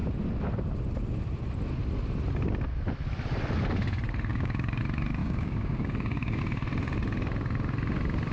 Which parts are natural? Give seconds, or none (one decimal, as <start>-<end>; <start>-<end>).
0.0-4.3; 4.8-5.2; 6.4-8.3